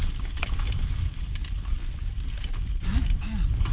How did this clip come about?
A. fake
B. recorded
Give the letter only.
B